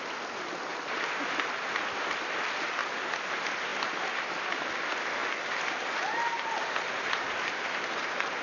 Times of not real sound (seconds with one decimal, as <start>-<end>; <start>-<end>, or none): 0.0-0.7; 1.2-2.8; 3.3-3.7; 4.3-5.2; 5.8-8.4